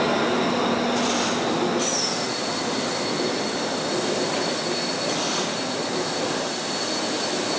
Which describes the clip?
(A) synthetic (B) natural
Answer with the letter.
B